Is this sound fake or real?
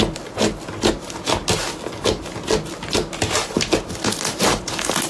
real